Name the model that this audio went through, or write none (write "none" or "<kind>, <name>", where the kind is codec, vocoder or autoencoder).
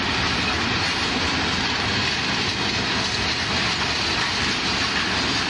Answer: none